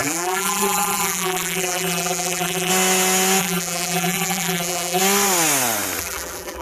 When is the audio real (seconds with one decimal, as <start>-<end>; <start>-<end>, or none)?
2.7-3.4; 5.0-6.0